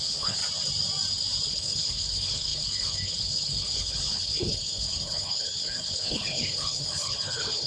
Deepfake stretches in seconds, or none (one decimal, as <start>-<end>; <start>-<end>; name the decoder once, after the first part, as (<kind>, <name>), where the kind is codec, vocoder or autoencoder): 0.0-0.4 (codec, HILCodec); 1.5-7.7